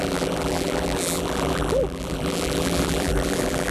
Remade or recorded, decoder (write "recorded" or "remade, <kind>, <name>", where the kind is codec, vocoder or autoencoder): remade, vocoder, BigVGAN v2